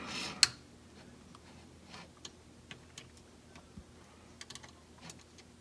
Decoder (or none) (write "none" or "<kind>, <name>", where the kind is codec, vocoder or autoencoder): none